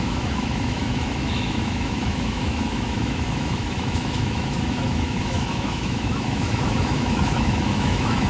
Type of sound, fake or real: fake